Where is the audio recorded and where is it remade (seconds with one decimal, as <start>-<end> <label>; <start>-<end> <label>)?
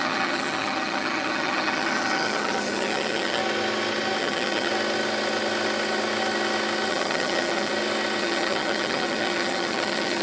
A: 0.0-3.4 remade; 3.4-4.2 recorded; 4.2-4.7 remade; 4.7-6.9 recorded; 6.9-7.7 remade; 7.7-8.2 recorded; 8.2-10.2 remade